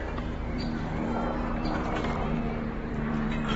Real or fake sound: fake